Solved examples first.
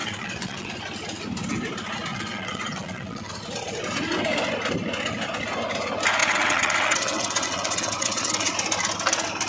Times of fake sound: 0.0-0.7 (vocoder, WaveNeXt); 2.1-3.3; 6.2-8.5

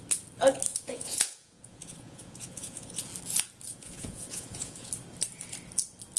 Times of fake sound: 0.7-3.1 (vocoder, Vocos); 3.7-4.9

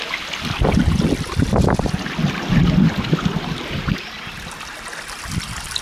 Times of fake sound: none

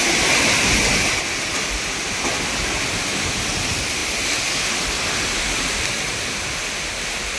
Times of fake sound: none

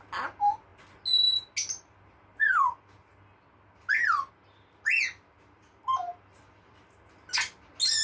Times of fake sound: none

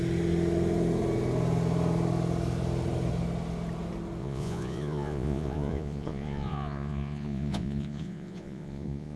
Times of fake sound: 4.2-9.2 (vocoder, Vocos)

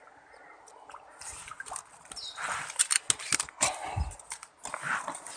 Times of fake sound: none

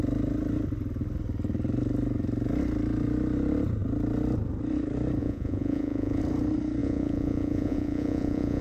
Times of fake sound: 5.2-6.2 (vocoder, Vocos); 6.8-8.6